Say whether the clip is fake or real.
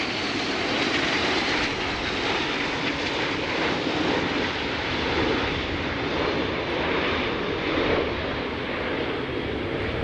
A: real